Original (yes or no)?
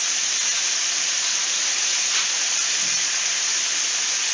yes